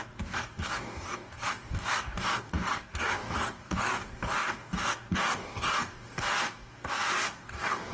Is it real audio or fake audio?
fake